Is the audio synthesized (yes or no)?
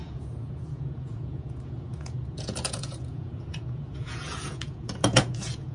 yes